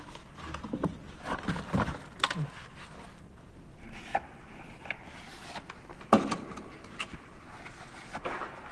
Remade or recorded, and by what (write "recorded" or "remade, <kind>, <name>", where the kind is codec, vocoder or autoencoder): recorded